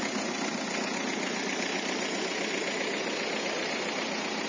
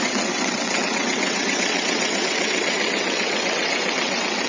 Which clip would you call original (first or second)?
first